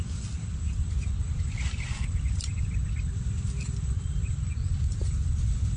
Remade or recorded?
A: remade